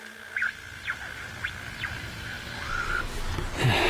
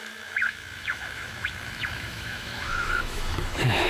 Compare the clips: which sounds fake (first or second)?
second